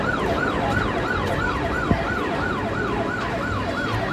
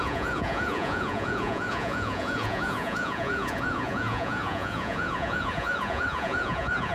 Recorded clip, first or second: first